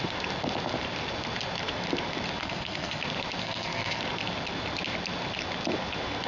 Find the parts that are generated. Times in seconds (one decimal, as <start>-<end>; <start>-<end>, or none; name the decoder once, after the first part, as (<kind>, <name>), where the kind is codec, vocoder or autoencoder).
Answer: 2.4-3.0 (codec, SNAC); 3.4-4.0